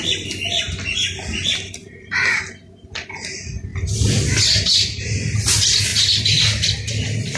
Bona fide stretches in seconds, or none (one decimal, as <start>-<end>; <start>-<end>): 0.0-1.8; 2.4-7.4